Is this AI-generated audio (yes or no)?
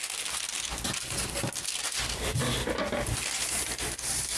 no